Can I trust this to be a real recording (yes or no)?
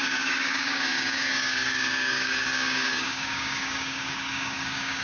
no